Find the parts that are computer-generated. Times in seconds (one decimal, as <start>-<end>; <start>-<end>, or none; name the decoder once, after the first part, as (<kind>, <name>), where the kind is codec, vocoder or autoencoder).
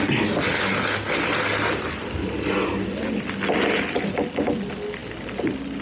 none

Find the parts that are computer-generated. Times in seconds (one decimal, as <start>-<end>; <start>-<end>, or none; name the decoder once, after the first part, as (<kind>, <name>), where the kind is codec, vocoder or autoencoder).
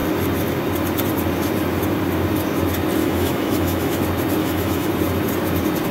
3.0-4.0 (autoencoder, DAC-VAE); 4.4-4.9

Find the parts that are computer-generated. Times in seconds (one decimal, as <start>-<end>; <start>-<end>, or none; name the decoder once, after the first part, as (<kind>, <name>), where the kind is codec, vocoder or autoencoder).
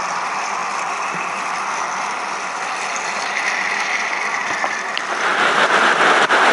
0.0-0.6 (vocoder, BigVGAN v2); 4.5-5.3; 5.8-6.5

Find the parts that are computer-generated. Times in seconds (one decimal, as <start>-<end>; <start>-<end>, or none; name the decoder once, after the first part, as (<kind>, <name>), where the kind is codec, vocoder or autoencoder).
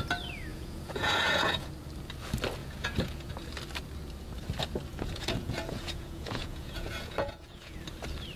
0.5-1.7 (vocoder, Vocos); 2.6-3.3; 4.9-7.8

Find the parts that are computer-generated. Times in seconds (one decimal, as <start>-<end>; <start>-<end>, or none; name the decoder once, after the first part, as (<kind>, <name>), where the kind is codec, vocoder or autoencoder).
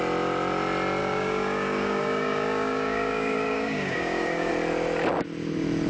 1.0-4.5 (codec, DAC)